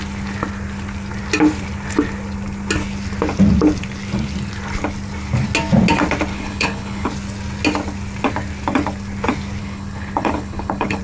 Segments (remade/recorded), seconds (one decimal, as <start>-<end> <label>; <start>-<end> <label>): 0.0-6.3 recorded; 6.3-7.1 remade; 7.1-9.6 recorded; 9.6-11.0 remade